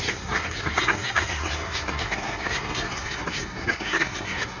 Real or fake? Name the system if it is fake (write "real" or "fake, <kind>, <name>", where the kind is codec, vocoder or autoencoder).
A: fake, codec, SNAC